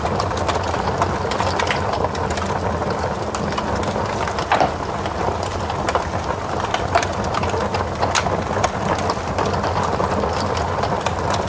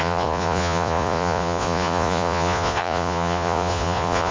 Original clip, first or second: first